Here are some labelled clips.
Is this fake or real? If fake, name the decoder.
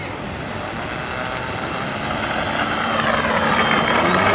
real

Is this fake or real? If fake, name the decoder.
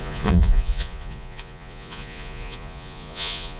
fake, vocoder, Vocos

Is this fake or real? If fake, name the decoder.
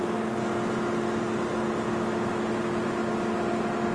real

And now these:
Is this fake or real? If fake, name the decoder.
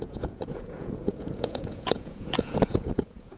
fake, vocoder, Vocos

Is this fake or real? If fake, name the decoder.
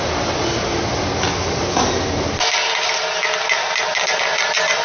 real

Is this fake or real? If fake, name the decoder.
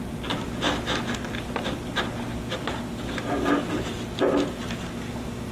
real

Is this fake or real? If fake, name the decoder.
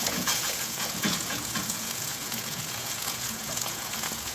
fake, vocoder, Vocos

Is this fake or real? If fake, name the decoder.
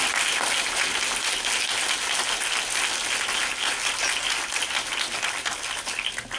real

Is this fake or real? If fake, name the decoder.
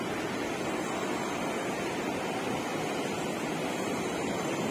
real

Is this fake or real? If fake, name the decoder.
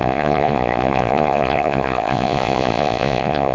fake, vocoder, Vocos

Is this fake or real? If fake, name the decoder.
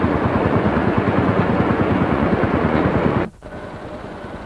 fake, vocoder, Vocos